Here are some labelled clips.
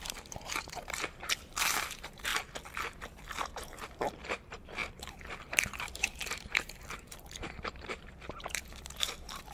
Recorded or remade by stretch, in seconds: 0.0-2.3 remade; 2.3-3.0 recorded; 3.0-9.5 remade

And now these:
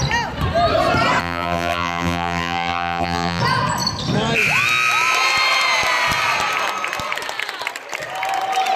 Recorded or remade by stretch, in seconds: 0.0-1.2 recorded; 1.2-3.4 remade; 3.4-8.8 recorded